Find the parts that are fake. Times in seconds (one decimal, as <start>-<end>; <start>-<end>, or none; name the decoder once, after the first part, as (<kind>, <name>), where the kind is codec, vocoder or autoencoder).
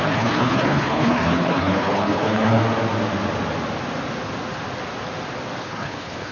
0.0-2.6 (codec, HILCodec); 5.6-6.3